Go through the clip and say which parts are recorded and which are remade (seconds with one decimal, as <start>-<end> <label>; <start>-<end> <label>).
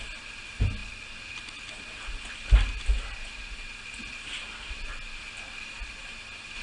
0.0-6.6 recorded